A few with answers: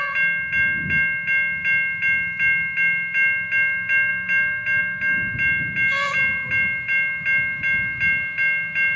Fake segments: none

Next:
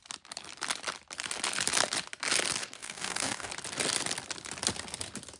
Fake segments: 2.6-3.5

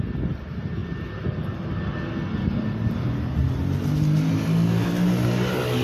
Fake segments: none

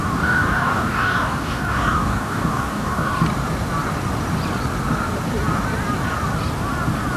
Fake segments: 0.0-3.1

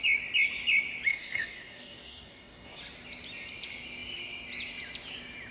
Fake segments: 1.1-2.8

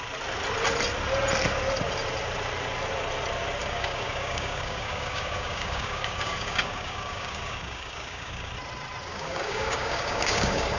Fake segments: 3.6-8.5; 9.1-10.8

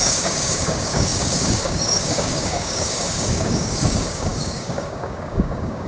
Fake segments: 0.0-5.9